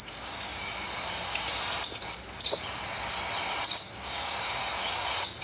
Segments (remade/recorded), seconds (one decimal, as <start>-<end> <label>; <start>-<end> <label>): 0.0-0.5 remade; 0.5-3.7 recorded; 3.7-4.6 remade; 4.6-5.4 recorded